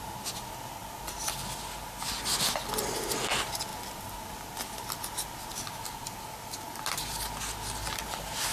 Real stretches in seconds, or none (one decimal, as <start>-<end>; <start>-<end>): 0.0-8.5